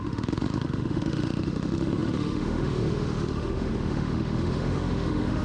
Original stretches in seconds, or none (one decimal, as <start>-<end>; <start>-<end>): none